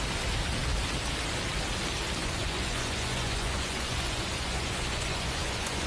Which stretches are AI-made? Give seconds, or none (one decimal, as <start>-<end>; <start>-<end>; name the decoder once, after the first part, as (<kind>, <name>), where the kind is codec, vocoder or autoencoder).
2.2-5.9 (vocoder, Vocos)